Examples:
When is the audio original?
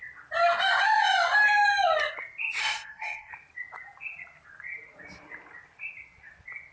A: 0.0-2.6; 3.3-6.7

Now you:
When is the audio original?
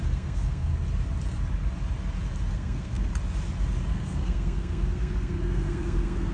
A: 0.7-2.5; 3.1-3.9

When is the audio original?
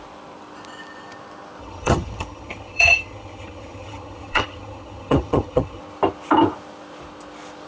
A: 0.0-1.6; 5.8-7.7